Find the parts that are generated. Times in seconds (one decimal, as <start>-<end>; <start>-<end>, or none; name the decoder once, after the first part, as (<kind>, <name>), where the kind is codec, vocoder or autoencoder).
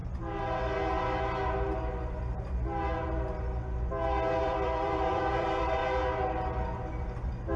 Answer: 4.4-5.8 (vocoder, BigVGAN v2)